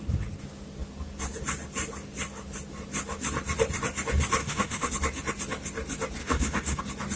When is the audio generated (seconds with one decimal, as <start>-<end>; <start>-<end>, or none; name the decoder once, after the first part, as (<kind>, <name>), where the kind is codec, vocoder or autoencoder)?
4.4-4.9 (autoencoder, DAC-VAE); 6.2-6.8